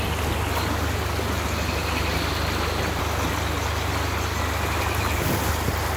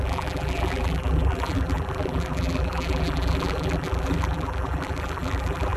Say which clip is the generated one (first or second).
second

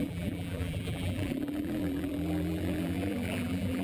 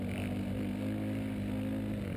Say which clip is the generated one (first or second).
first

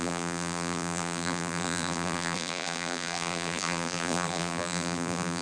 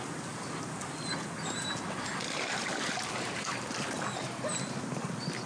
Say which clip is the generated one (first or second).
first